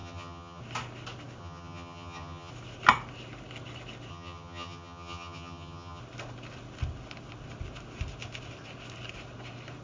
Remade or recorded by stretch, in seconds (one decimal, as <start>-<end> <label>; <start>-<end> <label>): 0.0-0.6 remade; 0.6-1.4 recorded; 1.4-2.5 remade; 2.5-4.1 recorded; 4.1-6.0 remade; 6.0-9.8 recorded